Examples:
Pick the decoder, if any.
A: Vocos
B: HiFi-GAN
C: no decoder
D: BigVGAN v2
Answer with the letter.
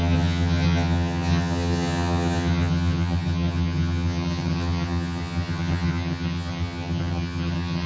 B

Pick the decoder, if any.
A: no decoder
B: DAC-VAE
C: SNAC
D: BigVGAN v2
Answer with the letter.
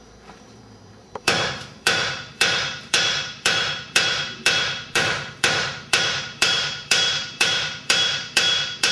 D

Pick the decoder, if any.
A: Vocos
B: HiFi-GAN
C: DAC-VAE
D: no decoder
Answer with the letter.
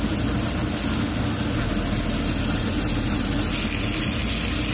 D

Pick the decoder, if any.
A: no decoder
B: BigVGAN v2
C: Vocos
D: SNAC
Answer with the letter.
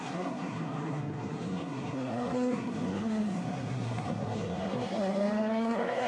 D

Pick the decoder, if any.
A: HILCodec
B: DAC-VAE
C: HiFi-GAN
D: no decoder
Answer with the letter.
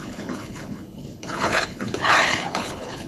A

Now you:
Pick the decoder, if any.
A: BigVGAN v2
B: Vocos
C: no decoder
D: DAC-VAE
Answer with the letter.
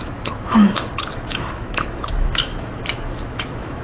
D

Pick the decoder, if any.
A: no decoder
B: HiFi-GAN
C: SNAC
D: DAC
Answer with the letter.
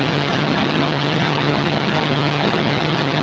B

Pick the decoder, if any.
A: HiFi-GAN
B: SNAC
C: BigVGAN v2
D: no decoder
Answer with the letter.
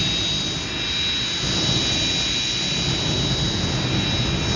D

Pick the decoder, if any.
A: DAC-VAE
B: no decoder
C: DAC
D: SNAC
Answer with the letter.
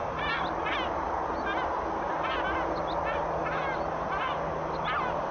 B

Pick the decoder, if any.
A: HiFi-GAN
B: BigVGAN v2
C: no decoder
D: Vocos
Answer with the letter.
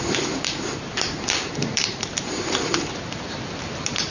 B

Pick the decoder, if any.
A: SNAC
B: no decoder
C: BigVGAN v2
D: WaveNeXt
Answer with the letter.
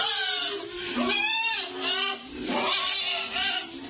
B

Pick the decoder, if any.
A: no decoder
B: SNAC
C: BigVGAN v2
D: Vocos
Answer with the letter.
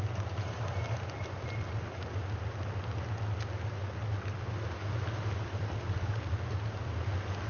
A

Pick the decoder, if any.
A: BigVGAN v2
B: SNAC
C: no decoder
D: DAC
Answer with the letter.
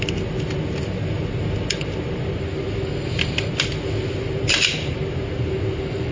C